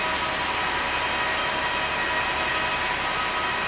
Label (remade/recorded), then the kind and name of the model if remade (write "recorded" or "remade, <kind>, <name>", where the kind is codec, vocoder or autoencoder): recorded